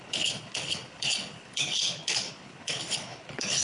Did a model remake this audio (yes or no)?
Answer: yes